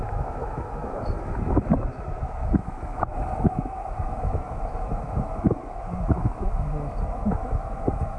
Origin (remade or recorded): remade